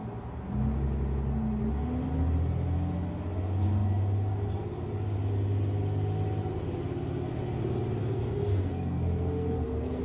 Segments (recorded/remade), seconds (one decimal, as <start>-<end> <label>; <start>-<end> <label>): 0.0-8.0 recorded; 8.0-10.0 remade